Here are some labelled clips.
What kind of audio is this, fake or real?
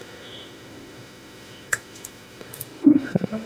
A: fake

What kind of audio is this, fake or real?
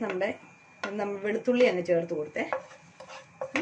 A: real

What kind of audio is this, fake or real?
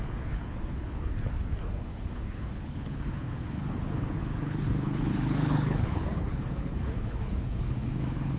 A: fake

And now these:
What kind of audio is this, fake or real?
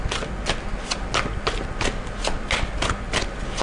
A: real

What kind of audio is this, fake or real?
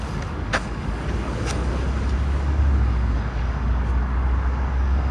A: fake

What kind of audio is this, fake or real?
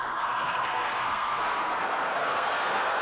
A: fake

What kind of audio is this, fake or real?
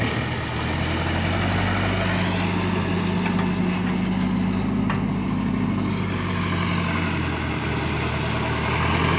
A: real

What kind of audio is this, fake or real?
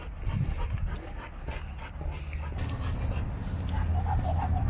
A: real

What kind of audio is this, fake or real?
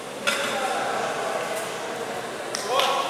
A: real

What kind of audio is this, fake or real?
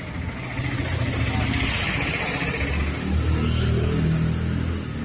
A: real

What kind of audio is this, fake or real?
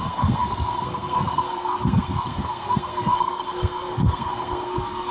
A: fake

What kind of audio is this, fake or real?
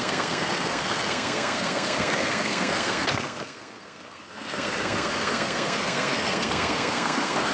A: fake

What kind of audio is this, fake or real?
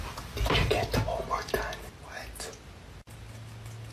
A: real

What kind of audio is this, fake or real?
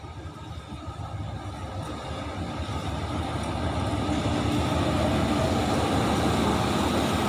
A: real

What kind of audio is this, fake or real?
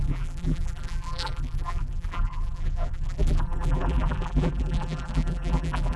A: fake